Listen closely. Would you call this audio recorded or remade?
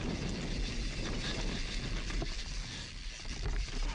recorded